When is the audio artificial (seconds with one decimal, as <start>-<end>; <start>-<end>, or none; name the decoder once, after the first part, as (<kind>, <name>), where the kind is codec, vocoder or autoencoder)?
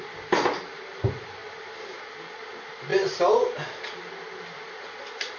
none